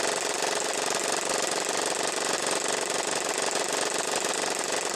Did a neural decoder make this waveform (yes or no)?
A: no